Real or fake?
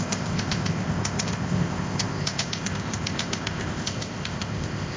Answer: fake